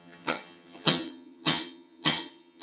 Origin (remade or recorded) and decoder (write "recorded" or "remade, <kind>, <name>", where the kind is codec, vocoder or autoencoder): remade, vocoder, HiFi-GAN